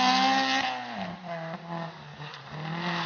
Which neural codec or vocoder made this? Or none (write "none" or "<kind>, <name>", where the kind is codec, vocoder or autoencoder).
none